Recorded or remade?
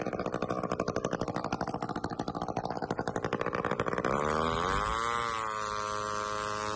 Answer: recorded